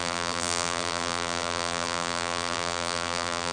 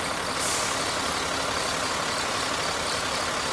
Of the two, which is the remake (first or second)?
first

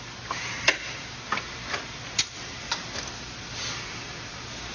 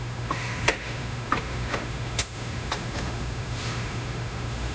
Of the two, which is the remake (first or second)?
second